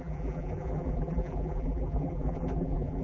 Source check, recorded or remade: remade